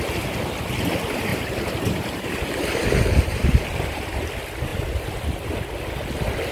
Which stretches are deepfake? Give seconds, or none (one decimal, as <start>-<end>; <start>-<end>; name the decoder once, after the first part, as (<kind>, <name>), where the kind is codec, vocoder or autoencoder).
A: 1.3-4.1 (vocoder, BigVGAN v2)